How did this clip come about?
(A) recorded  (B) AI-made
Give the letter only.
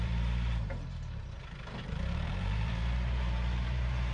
B